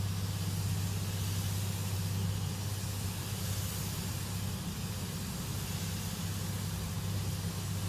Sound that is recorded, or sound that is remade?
recorded